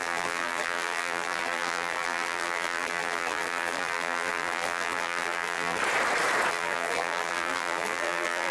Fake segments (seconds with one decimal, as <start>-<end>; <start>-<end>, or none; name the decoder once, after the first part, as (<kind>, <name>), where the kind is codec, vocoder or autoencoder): 0.0-5.8 (vocoder, BigVGAN v2); 6.5-8.5